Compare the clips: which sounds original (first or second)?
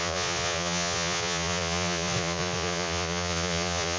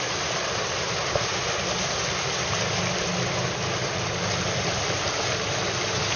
second